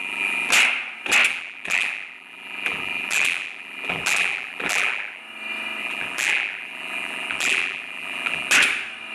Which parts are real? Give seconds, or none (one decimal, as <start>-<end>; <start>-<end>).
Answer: 0.5-1.3; 5.2-5.8; 8.5-9.1